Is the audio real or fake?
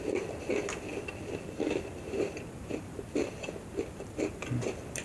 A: fake